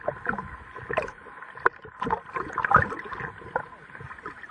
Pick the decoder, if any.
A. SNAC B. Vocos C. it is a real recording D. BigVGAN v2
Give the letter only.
C